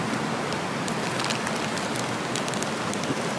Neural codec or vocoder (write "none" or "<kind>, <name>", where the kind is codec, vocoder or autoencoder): none